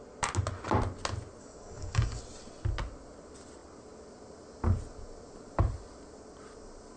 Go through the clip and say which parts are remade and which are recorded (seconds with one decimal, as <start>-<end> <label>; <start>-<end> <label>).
0.0-1.4 recorded; 1.4-2.2 remade; 2.2-7.0 recorded